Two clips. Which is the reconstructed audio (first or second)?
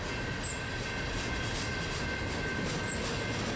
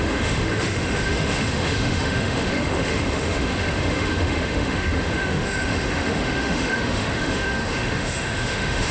second